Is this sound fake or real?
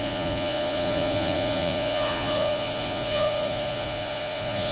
fake